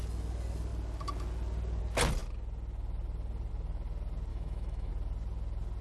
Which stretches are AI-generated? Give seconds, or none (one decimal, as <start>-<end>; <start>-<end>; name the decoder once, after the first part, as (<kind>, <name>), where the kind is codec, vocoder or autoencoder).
4.3-4.9 (autoencoder, DAC-VAE)